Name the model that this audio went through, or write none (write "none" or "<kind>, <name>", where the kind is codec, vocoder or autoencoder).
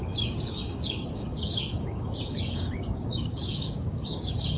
codec, DAC